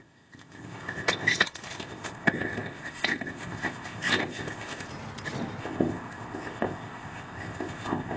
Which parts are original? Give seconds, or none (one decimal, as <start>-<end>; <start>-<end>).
4.9-5.6